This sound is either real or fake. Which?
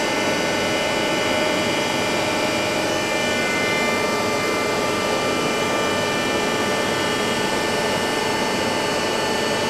real